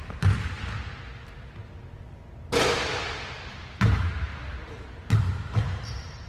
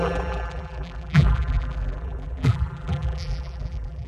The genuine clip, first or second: first